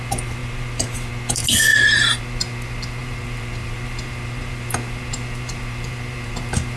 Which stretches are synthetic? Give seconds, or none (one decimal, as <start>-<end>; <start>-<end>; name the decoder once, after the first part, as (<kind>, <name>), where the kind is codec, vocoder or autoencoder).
0.4-1.1 (vocoder, BigVGAN v2); 1.7-2.2; 3.0-6.8